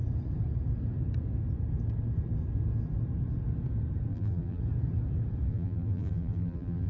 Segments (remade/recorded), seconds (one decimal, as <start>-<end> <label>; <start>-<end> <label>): 0.0-4.1 recorded; 4.1-4.6 remade; 4.6-5.5 recorded; 5.5-6.9 remade